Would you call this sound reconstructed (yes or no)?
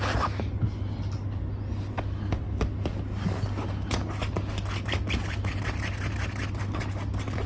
no